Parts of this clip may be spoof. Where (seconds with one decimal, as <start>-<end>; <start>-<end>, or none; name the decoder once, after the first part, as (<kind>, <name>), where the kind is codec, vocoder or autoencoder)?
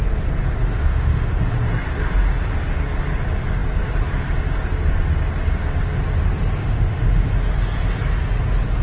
0.9-1.4 (autoencoder, DAC-VAE); 6.6-7.3